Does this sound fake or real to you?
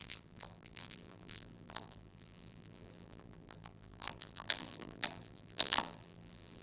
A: fake